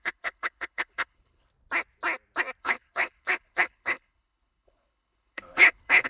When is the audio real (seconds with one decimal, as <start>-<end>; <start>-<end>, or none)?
1.5-2.6